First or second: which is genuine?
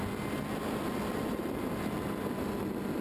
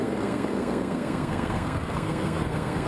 first